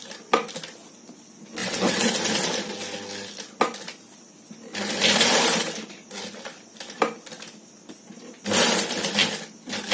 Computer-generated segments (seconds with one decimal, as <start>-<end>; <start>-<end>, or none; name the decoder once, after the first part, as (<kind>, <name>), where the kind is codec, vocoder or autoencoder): 1.6-2.1 (vocoder, WaveNeXt)